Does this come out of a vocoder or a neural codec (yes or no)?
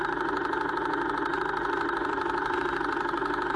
no